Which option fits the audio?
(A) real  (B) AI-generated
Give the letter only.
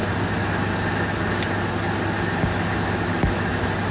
A